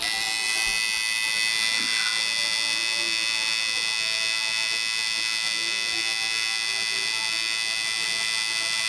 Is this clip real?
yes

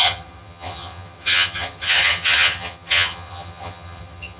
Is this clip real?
no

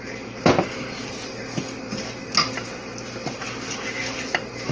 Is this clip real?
yes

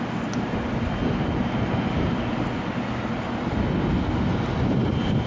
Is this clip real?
yes